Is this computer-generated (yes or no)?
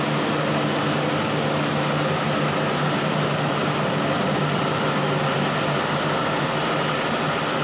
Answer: no